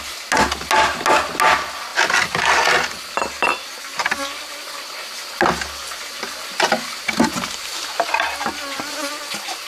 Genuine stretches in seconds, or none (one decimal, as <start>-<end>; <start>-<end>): 0.0-9.7